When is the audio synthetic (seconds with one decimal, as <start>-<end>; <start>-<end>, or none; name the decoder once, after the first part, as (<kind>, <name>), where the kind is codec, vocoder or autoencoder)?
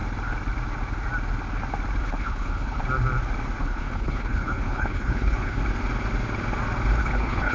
2.0-2.8 (codec, HILCodec); 3.6-5.6; 7.0-7.5